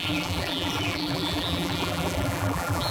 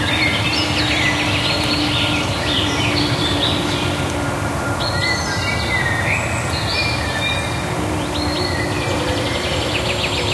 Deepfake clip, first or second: first